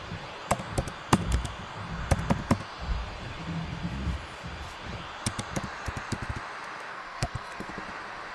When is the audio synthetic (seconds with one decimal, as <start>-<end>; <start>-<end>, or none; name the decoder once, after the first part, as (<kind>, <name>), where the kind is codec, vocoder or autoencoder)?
6.9-7.7 (codec, SNAC)